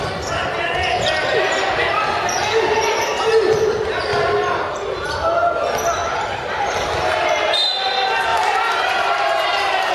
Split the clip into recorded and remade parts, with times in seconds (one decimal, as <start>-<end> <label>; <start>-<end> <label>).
0.0-6.0 recorded; 6.0-6.9 remade; 6.9-8.3 recorded; 8.3-9.9 remade